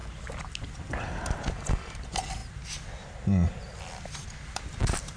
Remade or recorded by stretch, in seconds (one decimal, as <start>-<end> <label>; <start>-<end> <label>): 0.0-5.2 recorded